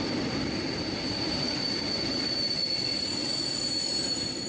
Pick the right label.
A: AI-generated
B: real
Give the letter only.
A